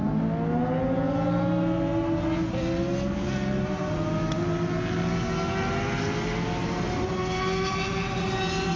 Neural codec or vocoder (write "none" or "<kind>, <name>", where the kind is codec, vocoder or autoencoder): none